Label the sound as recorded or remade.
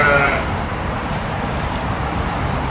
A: remade